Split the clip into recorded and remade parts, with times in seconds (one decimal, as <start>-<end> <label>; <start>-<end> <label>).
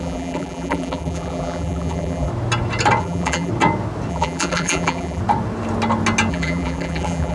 0.0-2.3 remade; 2.3-3.0 recorded; 3.0-3.5 remade; 3.5-4.1 recorded; 4.1-5.2 remade; 5.2-6.3 recorded; 6.3-7.3 remade